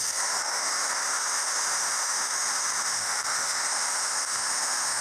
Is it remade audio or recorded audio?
remade